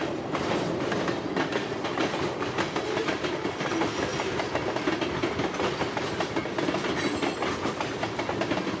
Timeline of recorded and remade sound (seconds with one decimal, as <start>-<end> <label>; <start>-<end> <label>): 0.0-8.8 recorded